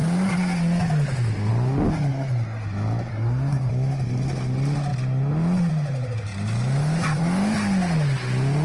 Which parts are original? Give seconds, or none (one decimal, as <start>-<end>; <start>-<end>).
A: 0.0-3.1; 3.7-8.6